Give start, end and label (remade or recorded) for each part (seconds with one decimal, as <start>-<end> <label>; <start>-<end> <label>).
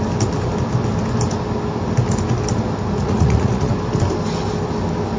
0.0-3.0 recorded; 3.0-3.7 remade; 3.7-5.2 recorded